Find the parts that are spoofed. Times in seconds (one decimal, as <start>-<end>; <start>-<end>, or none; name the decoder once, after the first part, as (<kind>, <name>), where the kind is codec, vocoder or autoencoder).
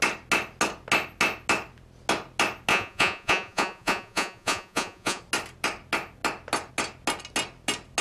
2.7-5.2 (vocoder, Vocos)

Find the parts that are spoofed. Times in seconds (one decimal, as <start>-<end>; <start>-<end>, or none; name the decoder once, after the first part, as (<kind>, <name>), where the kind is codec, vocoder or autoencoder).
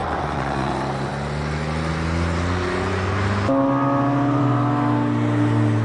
0.0-0.7 (vocoder, Vocos)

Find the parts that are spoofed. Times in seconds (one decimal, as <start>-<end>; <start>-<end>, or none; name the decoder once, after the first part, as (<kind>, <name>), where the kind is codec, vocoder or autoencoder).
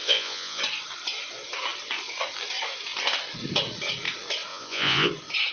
0.0-0.6 (vocoder, Vocos); 4.5-5.1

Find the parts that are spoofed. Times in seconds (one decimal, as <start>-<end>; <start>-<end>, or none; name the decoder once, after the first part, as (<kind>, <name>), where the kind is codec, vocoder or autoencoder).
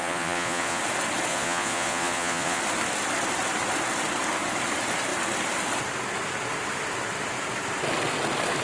0.0-0.8 (vocoder, Vocos); 1.3-2.6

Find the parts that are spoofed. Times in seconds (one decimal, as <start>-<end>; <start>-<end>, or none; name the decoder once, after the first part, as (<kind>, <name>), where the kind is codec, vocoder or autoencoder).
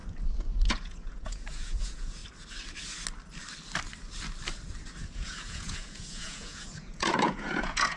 0.7-2.2 (vocoder, Vocos); 5.0-8.0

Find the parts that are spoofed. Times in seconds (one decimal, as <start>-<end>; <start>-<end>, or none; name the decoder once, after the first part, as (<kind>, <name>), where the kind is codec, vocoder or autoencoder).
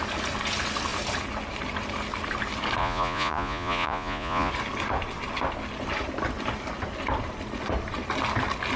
2.8-4.5 (vocoder, Vocos)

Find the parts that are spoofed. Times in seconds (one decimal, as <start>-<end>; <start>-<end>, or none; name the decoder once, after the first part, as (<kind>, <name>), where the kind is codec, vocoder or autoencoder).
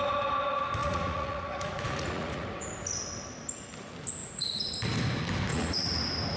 0.8-2.7 (vocoder, Vocos); 4.2-4.8; 5.5-6.0